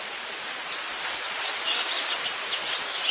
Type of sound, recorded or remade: recorded